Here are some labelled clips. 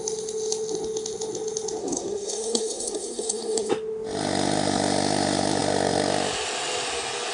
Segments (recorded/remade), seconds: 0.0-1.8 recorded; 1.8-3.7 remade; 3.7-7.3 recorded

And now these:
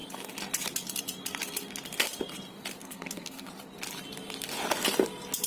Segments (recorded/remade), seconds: 0.0-2.8 recorded; 2.8-3.5 remade; 3.5-5.5 recorded

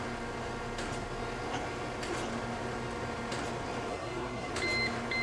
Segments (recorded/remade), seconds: 0.0-3.9 recorded; 3.9-4.5 remade; 4.5-5.2 recorded

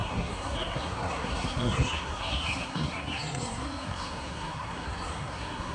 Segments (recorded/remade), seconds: 0.0-5.7 remade

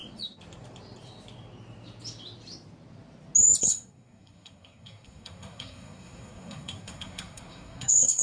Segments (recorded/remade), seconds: 0.0-3.6 recorded; 3.6-8.2 remade

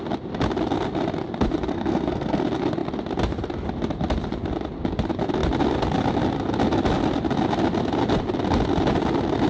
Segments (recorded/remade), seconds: 0.0-1.7 recorded; 1.7-2.4 remade; 2.4-9.5 recorded

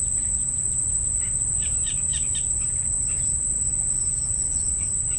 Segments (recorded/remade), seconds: 0.0-5.2 recorded